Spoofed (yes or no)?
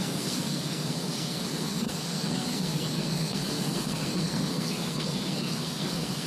yes